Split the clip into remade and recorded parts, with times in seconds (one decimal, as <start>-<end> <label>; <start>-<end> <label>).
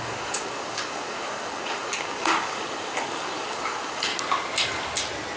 0.0-4.1 remade; 4.1-5.4 recorded